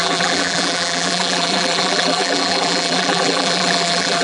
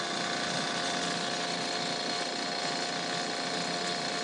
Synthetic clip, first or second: first